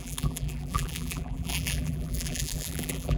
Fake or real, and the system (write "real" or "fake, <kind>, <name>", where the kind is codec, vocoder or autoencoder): fake, vocoder, BigVGAN v2